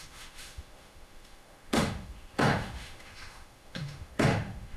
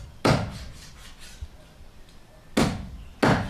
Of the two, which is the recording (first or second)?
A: second